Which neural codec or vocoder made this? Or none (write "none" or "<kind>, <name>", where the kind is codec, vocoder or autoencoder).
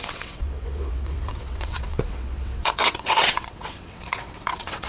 vocoder, WaveNeXt